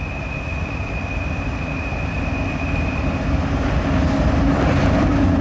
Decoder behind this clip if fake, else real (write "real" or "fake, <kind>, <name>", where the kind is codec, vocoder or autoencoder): real